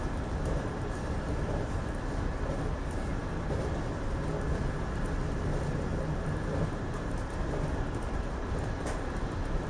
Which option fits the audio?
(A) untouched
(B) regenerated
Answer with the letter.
A